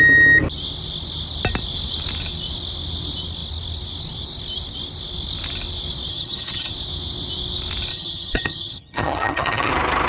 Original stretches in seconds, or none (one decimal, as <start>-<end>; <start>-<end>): 0.0-6.1; 6.7-7.9; 9.7-10.1